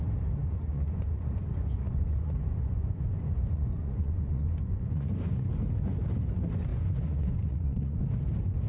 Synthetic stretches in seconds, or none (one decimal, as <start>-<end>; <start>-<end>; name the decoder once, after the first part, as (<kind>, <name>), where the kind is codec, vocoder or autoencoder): 0.4-5.5 (vocoder, Vocos); 6.7-8.0